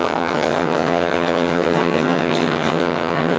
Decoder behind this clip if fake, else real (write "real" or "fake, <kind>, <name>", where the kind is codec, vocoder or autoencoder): fake, vocoder, HiFi-GAN